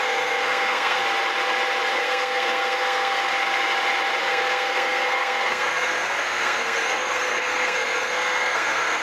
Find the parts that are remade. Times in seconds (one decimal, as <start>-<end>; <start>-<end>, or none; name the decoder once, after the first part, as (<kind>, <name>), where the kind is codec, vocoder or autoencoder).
0.0-1.0 (codec, SNAC); 1.9-3.3; 4.2-9.0